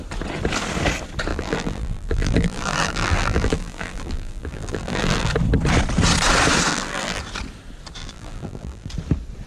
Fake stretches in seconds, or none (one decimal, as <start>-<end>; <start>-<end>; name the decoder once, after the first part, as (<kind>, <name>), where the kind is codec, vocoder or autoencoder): 1.3-5.3 (vocoder, BigVGAN v2); 6.7-7.2; 8.0-8.9